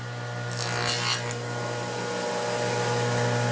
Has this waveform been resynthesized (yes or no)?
no